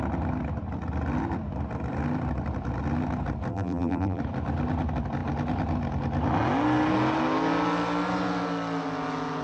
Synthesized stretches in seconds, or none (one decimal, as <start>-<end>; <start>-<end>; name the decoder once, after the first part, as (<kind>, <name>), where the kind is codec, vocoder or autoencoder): 3.5-4.2 (vocoder, BigVGAN v2)